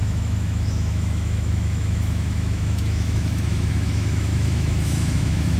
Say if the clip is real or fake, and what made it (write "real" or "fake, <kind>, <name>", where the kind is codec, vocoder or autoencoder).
fake, autoencoder, DAC-VAE